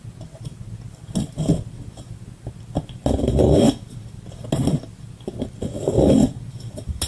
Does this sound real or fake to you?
real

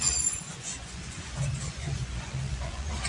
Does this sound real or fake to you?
fake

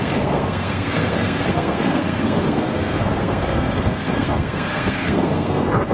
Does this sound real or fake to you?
fake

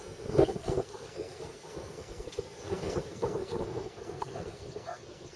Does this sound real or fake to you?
fake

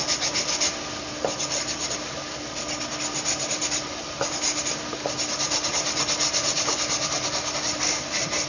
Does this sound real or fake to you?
real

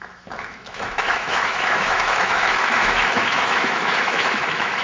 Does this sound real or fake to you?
fake